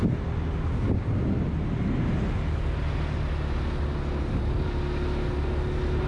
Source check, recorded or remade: recorded